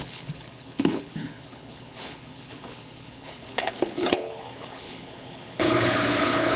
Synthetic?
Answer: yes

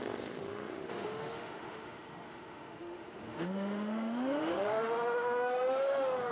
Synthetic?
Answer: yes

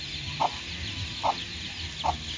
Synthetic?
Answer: no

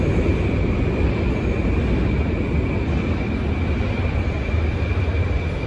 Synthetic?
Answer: no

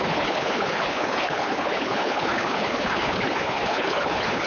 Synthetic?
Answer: yes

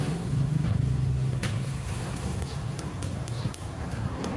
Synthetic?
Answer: yes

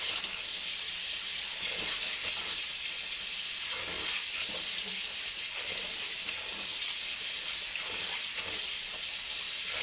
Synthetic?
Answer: no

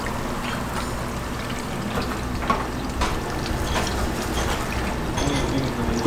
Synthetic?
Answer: no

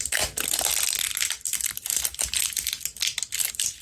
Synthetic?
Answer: no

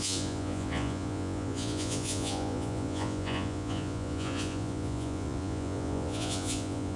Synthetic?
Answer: yes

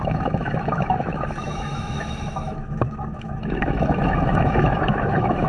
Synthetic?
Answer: yes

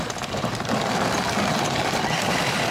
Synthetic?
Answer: no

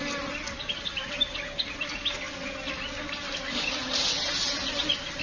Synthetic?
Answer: no